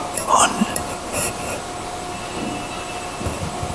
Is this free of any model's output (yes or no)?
yes